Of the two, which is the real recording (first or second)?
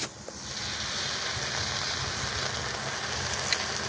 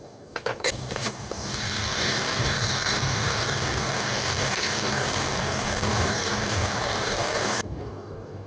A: first